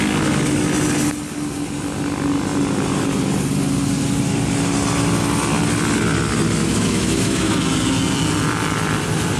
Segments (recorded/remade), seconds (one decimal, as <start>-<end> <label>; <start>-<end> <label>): 0.0-6.6 recorded; 6.6-7.5 remade; 7.5-9.4 recorded